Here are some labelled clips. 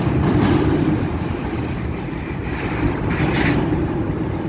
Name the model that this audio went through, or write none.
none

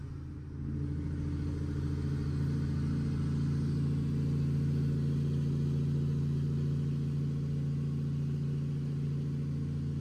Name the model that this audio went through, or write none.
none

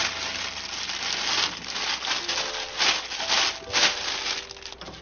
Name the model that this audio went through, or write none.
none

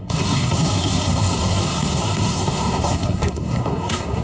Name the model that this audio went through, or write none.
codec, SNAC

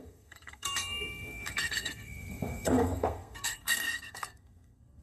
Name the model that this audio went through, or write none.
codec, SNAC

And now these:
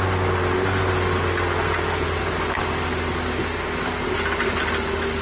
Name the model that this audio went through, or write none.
none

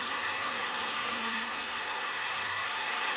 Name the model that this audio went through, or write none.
codec, SNAC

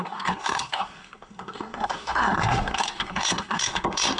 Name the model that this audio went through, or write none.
codec, SNAC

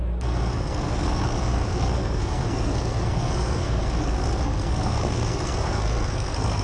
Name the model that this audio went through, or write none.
codec, SNAC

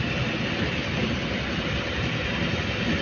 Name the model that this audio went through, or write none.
none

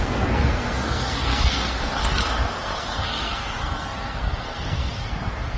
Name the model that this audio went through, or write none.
codec, SNAC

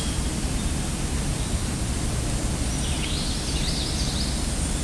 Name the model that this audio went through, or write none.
none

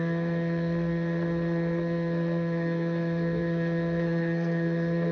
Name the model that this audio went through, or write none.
codec, SNAC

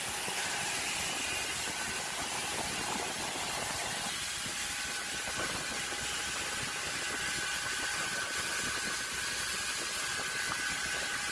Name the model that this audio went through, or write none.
none